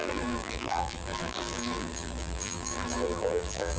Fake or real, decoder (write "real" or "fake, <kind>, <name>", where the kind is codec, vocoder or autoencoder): fake, vocoder, BigVGAN v2